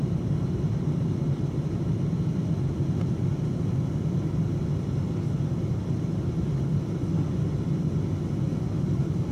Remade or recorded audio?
recorded